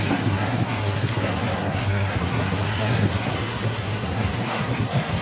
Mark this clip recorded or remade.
remade